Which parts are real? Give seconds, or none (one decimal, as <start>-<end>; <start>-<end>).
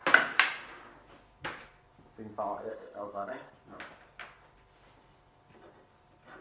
0.0-2.7; 3.5-6.4